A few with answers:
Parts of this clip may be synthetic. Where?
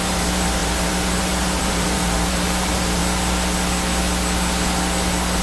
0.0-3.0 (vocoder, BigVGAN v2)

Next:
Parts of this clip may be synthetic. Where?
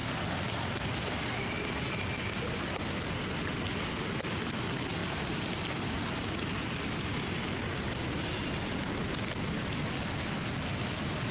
none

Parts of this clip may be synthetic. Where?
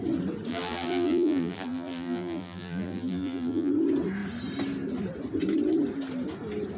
0.5-3.7 (vocoder, BigVGAN v2)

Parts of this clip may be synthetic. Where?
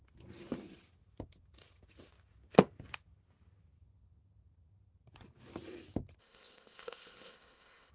6.2-7.9 (codec, ZipCodec)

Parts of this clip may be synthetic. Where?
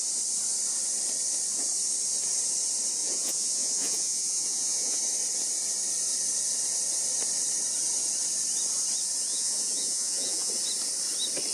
3.0-5.0 (vocoder, Vocos); 9.3-10.5